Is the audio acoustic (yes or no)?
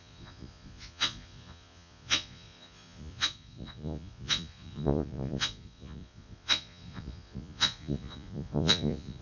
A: no